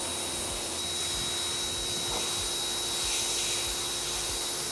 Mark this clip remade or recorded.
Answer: recorded